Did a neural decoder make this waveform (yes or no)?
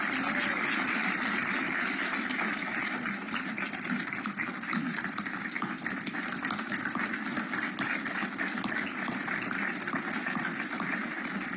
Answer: no